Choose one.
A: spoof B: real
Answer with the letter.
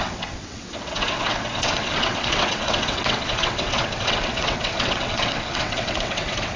A